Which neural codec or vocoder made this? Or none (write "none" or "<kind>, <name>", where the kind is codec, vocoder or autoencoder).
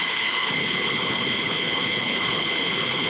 codec, HILCodec